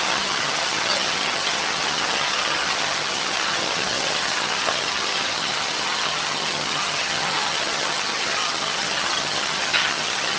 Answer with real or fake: fake